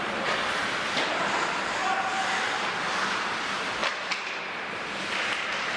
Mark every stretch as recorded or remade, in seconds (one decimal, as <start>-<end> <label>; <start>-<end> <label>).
0.0-1.8 remade; 1.8-2.4 recorded; 2.4-5.8 remade